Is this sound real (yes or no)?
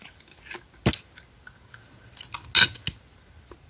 yes